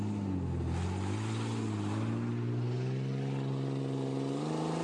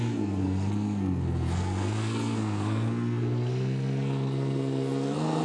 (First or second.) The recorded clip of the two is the first